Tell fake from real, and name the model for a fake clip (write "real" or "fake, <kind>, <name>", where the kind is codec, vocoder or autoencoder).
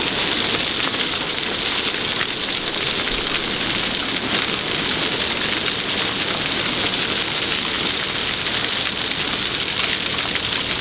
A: real